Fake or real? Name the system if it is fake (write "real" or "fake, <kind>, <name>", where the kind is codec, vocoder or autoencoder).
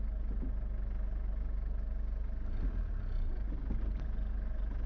real